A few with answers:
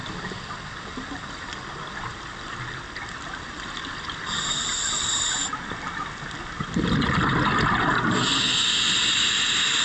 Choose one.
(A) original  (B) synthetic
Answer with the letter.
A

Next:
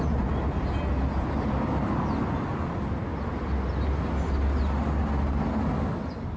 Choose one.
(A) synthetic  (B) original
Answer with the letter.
B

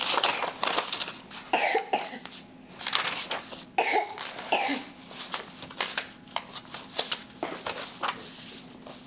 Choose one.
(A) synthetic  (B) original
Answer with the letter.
B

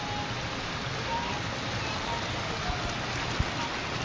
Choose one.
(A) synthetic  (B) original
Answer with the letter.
B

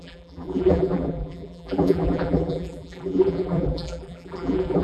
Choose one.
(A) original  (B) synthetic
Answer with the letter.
B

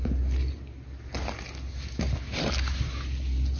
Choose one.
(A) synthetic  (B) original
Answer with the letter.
B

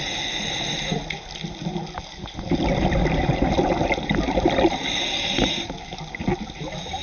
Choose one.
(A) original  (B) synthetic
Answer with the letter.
A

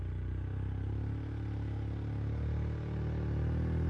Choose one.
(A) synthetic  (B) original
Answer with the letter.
B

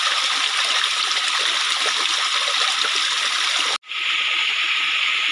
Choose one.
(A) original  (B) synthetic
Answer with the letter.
A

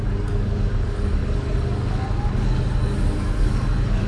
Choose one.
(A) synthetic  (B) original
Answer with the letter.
A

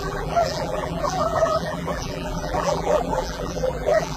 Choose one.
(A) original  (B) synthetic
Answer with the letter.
B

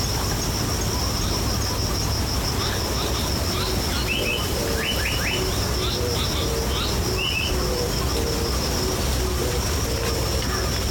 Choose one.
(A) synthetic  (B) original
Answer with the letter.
B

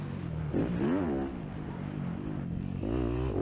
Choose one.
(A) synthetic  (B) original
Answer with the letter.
B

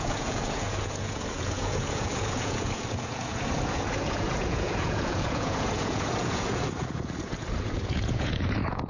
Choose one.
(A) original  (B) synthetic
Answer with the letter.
B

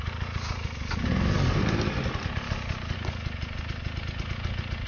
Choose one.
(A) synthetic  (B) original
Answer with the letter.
B